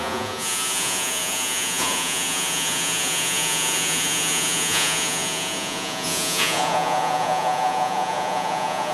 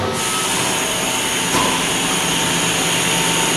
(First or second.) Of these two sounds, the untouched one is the second